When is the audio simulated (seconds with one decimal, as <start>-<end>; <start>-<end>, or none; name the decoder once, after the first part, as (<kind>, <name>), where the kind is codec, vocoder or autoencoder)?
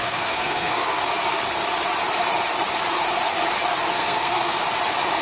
0.0-1.1 (codec, SNAC); 3.9-4.6